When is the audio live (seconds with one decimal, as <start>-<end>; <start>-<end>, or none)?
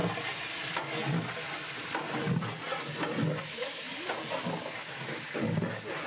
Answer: 0.0-3.4; 3.9-4.8; 5.4-6.1